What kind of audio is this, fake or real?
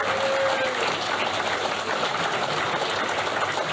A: real